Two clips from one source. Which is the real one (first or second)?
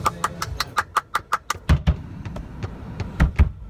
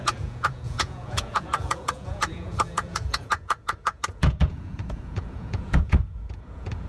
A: first